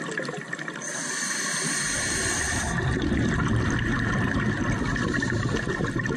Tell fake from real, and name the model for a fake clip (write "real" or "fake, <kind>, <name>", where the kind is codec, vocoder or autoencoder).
real